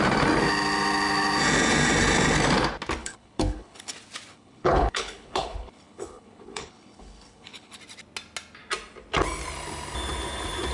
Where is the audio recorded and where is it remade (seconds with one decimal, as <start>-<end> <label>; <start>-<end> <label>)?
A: 0.0-3.0 recorded; 3.0-3.9 remade; 3.9-4.3 recorded; 4.3-7.8 remade; 7.8-10.7 recorded